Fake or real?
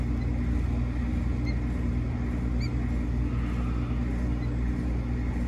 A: real